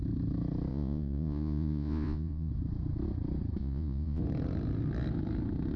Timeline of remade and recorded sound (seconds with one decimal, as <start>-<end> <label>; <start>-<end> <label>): 0.0-0.7 recorded; 0.7-2.5 remade; 2.5-3.6 recorded; 3.6-4.2 remade; 4.2-5.8 recorded

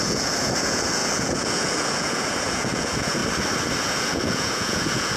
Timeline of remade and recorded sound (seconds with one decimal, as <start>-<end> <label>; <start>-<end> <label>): 0.0-3.2 remade; 3.2-3.8 recorded; 3.8-5.2 remade